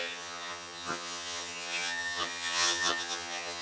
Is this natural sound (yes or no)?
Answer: no